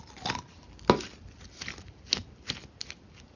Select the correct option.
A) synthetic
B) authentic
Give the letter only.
B